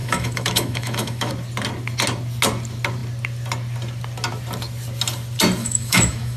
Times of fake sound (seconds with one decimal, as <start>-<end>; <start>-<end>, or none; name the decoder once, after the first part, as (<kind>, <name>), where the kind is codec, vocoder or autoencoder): 0.0-1.3 (autoencoder, DAC-VAE); 5.6-6.4